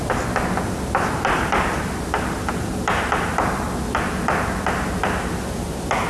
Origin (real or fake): fake